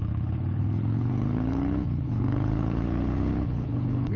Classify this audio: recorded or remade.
remade